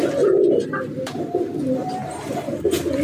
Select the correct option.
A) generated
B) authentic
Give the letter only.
B